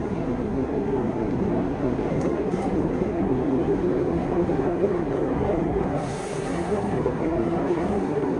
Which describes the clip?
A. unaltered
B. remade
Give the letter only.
B